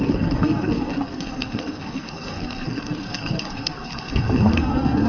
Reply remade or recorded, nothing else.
remade